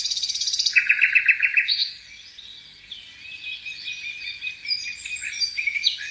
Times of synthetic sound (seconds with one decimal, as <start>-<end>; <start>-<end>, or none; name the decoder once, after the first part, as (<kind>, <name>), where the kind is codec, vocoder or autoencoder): none